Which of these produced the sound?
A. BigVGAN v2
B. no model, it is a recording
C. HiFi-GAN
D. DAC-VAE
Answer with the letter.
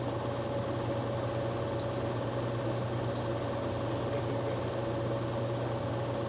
A